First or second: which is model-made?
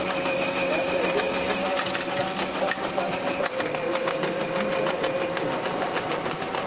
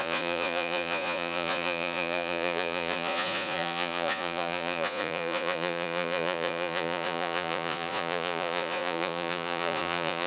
second